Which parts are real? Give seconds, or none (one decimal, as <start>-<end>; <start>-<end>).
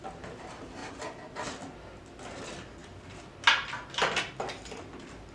0.0-0.8; 1.6-5.3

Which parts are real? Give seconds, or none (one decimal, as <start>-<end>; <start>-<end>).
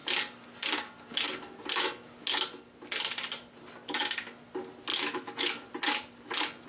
0.0-4.9; 5.7-6.7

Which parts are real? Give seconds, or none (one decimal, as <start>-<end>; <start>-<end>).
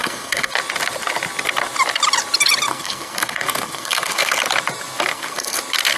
0.5-2.7; 4.4-5.1; 5.6-6.0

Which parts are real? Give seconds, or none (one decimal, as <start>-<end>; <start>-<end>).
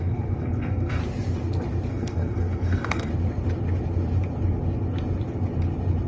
1.0-1.9; 3.1-6.1